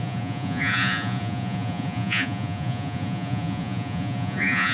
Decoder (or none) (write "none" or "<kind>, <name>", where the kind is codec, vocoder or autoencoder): vocoder, Vocos